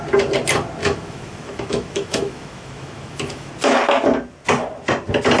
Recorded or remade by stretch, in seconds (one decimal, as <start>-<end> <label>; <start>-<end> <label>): 0.0-0.8 recorded; 0.8-3.5 remade; 3.5-5.4 recorded